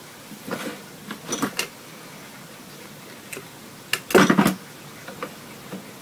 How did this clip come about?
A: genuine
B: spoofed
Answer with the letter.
A